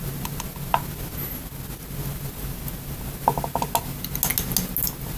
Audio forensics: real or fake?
real